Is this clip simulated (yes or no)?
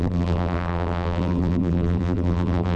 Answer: yes